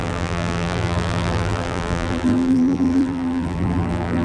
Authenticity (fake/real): fake